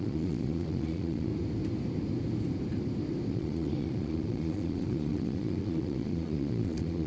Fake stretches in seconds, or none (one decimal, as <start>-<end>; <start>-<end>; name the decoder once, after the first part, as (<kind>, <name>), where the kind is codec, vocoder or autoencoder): 0.0-1.3 (vocoder, Vocos); 3.3-7.1